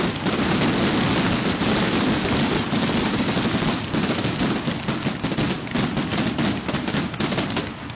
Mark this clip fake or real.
real